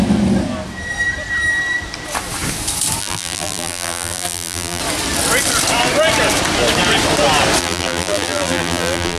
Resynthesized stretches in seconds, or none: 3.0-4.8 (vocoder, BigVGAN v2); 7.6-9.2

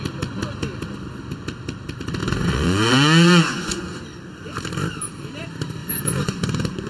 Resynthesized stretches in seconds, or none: 2.2-4.0 (vocoder, Vocos); 5.8-6.9

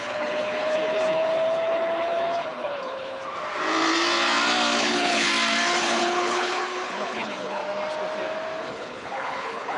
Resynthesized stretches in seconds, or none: 0.0-3.2 (codec, HILCodec); 4.8-5.3; 5.8-7.6; 8.6-9.8

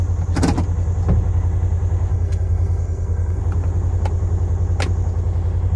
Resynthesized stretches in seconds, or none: 2.1-3.4 (codec, SNAC)

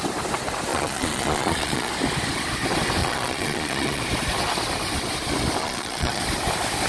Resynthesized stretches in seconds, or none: 0.7-1.9 (vocoder, Vocos); 3.0-4.0; 5.6-6.2

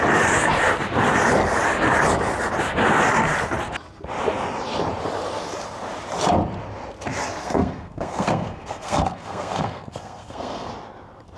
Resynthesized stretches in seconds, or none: 7.4-10.7 (codec, SNAC)

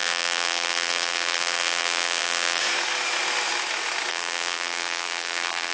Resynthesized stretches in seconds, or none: 0.0-2.6 (vocoder, BigVGAN v2); 4.1-5.7